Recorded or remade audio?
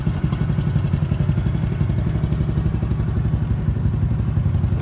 recorded